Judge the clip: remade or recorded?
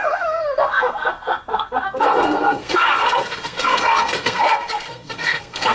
remade